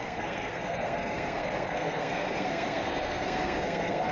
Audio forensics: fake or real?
fake